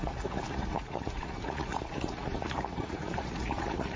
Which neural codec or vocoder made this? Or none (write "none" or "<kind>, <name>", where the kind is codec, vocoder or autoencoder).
vocoder, Vocos